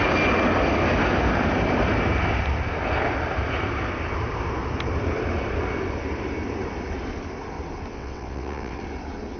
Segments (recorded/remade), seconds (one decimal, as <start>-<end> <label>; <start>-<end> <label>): 0.0-7.9 recorded; 7.9-8.8 remade; 8.8-9.4 recorded